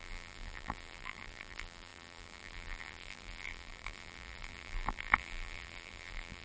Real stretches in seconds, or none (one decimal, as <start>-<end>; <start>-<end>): none